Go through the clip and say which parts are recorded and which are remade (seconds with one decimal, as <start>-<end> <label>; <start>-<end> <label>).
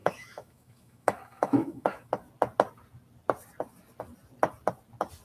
0.0-2.1 remade; 2.1-5.2 recorded